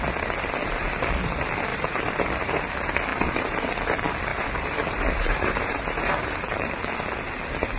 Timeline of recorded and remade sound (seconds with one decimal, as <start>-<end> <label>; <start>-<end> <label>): 0.0-1.7 recorded; 1.7-2.6 remade; 2.6-3.1 recorded; 3.1-3.7 remade; 3.7-4.3 recorded; 4.3-6.7 remade; 6.7-7.8 recorded